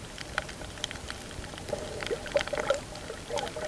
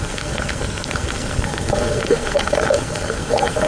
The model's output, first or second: second